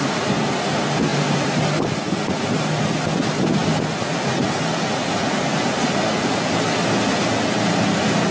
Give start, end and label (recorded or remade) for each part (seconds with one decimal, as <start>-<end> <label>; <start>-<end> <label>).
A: 0.0-1.1 recorded; 1.1-1.9 remade; 1.9-8.3 recorded